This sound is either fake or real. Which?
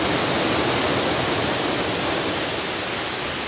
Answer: real